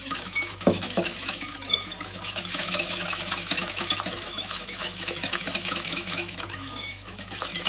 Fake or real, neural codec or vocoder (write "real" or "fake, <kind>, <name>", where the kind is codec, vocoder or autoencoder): fake, autoencoder, DAC-VAE